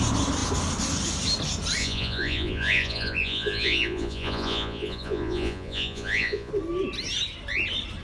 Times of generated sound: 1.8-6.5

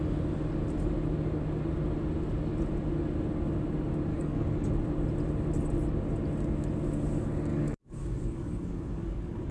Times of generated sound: 4.1-4.7; 7.5-9.5

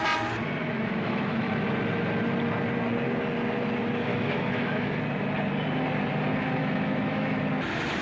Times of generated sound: 0.6-1.5; 4.1-5.0; 6.6-7.4

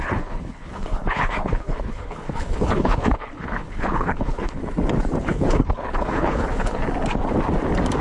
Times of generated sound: 0.0-4.6; 5.2-6.8

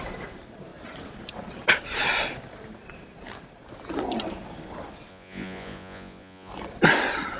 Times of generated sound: 5.1-6.5

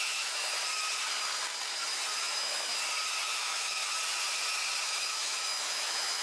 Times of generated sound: 0.0-0.6; 2.2-2.7; 3.4-3.8; 4.8-6.2

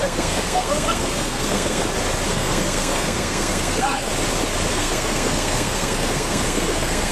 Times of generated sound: 0.0-1.8; 2.3-4.1; 4.7-7.1